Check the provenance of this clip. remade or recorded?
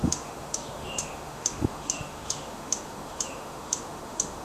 remade